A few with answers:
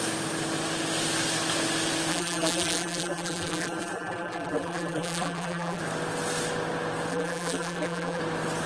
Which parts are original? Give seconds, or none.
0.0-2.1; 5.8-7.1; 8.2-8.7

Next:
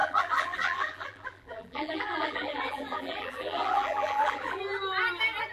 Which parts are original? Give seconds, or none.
4.6-5.5

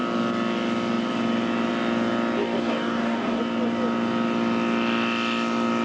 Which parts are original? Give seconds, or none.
0.0-2.4; 3.4-5.8

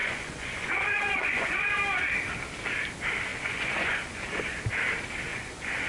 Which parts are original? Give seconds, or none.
1.6-3.3; 4.6-5.3

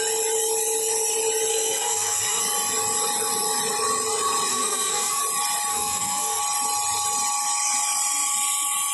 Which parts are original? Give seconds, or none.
0.0-1.5; 2.4-4.5; 5.2-5.7; 6.4-8.9